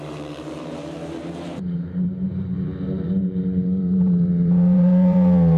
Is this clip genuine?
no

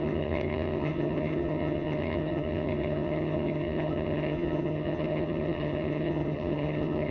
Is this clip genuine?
no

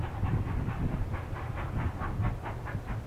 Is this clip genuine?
yes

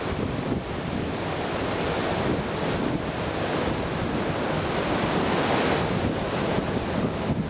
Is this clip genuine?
yes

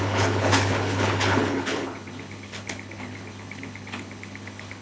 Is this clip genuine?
no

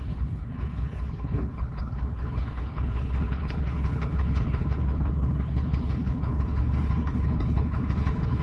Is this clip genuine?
no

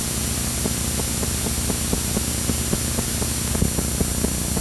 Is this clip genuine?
yes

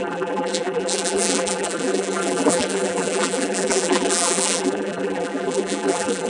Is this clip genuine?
no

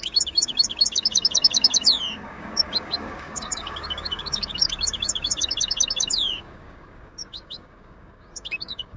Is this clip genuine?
no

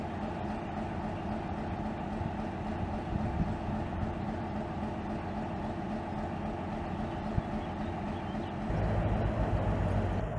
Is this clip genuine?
yes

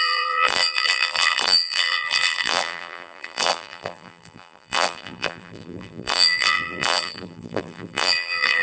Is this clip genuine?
no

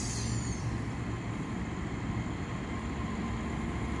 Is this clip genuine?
no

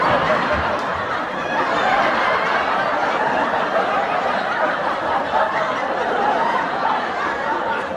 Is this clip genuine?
no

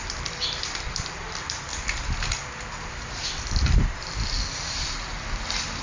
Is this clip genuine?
yes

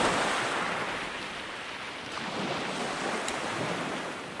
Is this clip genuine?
yes